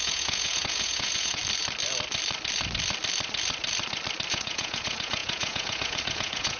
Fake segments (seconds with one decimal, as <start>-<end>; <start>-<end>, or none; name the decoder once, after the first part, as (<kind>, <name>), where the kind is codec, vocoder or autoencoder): 0.0-1.4 (vocoder, Vocos); 4.3-6.6